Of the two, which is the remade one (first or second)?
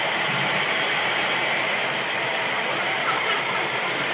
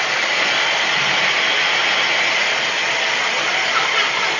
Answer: first